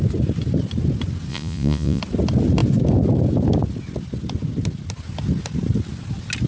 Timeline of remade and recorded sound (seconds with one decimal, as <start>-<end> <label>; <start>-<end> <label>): 0.0-1.3 recorded; 1.3-2.0 remade; 2.0-6.5 recorded